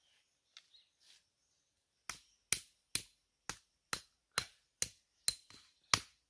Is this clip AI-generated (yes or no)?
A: no